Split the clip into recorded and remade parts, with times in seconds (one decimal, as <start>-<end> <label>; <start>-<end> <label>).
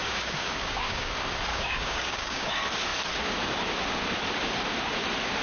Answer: 0.0-1.1 remade; 1.1-1.5 recorded; 1.5-2.5 remade; 2.5-5.4 recorded